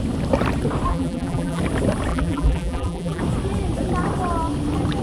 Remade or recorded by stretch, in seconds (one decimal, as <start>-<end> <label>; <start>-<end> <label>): 0.0-0.9 recorded; 0.9-1.6 remade; 1.6-2.1 recorded; 2.1-3.2 remade; 3.2-5.0 recorded

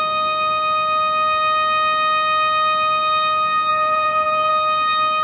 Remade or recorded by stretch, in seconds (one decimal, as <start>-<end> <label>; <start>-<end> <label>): 0.0-3.7 recorded; 3.7-4.5 remade; 4.5-5.2 recorded